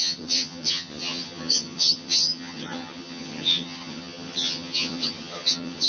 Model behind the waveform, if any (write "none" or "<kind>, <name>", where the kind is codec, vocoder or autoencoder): vocoder, HiFi-GAN